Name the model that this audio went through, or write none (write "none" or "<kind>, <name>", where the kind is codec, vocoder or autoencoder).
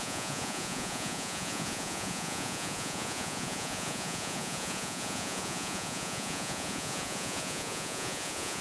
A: vocoder, Vocos